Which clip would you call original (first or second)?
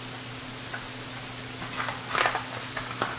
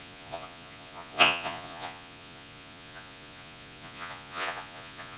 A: first